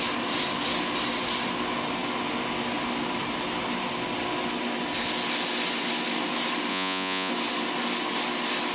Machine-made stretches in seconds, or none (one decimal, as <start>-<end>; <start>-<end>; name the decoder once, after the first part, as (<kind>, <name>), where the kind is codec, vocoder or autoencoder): 6.7-7.3 (vocoder, Vocos)